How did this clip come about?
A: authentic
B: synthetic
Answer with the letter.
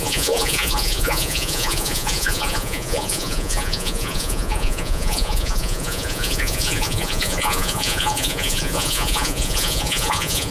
B